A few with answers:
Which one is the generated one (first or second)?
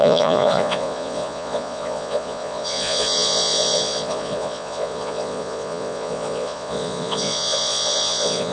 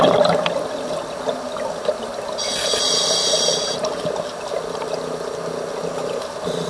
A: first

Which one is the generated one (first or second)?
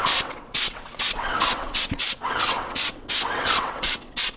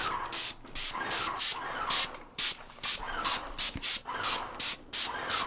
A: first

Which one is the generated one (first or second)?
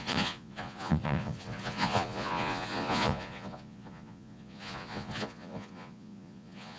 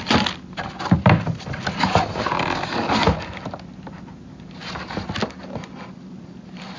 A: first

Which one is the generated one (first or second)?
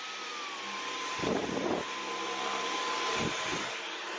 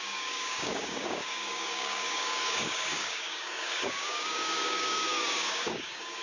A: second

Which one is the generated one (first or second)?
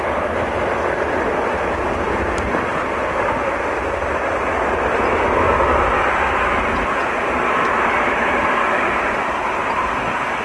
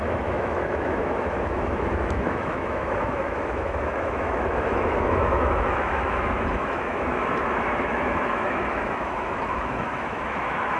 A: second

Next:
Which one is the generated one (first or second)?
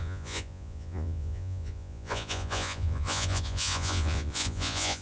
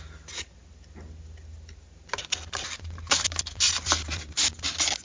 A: first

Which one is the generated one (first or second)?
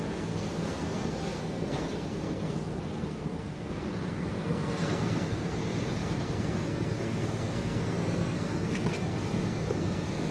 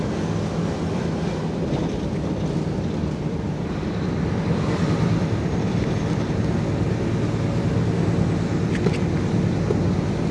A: first